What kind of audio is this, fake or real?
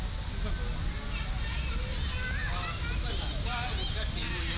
real